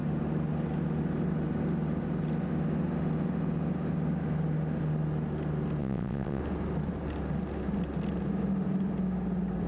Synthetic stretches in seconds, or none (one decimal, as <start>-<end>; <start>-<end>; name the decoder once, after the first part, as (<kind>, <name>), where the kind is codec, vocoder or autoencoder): 5.8-6.4 (vocoder, WaveNeXt)